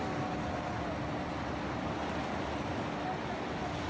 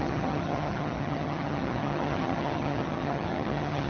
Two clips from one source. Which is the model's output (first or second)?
second